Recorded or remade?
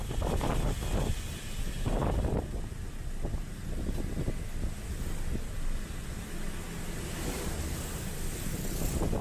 recorded